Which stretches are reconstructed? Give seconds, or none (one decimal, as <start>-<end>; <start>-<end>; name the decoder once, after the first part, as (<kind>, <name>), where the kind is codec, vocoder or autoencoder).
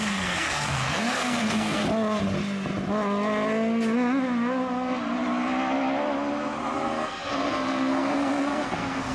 0.0-1.8 (codec, SNAC); 6.9-9.1